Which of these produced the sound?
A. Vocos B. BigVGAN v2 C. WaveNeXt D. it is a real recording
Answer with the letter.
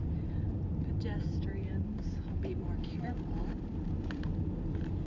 B